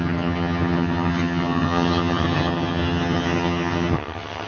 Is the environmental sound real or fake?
fake